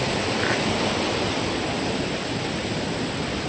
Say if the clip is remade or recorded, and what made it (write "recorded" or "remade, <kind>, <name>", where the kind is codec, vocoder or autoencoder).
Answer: recorded